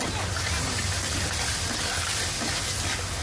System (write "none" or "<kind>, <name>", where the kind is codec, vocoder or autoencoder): none